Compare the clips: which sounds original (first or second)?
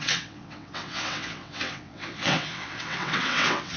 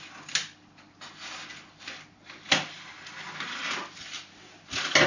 second